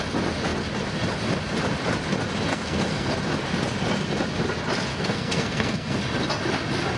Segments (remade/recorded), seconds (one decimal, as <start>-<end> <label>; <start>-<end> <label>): 0.0-2.5 recorded; 2.5-3.1 remade; 3.1-4.9 recorded; 4.9-6.0 remade; 6.0-7.0 recorded